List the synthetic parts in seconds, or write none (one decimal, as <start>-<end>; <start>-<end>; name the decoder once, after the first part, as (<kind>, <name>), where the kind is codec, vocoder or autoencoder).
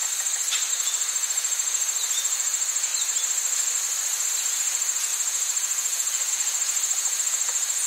0.7-2.9 (vocoder, Vocos); 4.4-7.9